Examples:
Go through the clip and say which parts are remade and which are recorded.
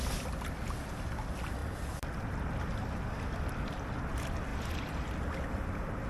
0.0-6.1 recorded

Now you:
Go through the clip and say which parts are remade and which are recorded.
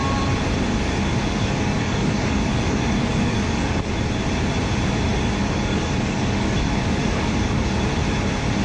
0.0-1.2 recorded; 1.2-3.9 remade; 3.9-5.4 recorded; 5.4-7.7 remade; 7.7-8.6 recorded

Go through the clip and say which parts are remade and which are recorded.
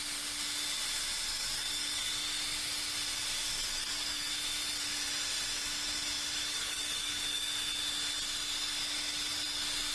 0.0-1.3 recorded; 1.3-2.1 remade; 2.1-3.8 recorded; 3.8-4.3 remade; 4.3-6.5 recorded; 6.5-7.5 remade; 7.5-9.9 recorded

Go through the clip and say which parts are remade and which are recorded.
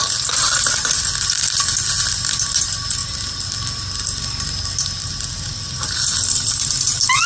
0.0-7.3 recorded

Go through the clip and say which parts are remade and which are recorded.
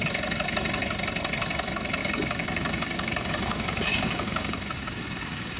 0.0-2.0 recorded; 2.0-5.6 remade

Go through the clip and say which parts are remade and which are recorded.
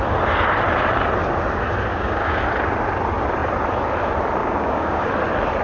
0.0-1.9 recorded; 1.9-2.4 remade; 2.4-4.4 recorded; 4.4-5.0 remade; 5.0-5.6 recorded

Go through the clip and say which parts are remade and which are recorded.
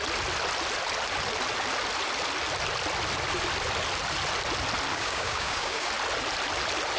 0.0-4.9 recorded; 4.9-5.9 remade; 5.9-7.0 recorded